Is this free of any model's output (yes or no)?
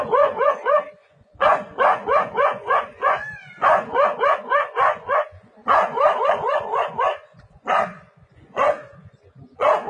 no